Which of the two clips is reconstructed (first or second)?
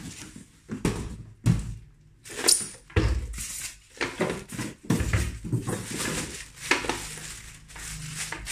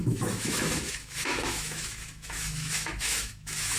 second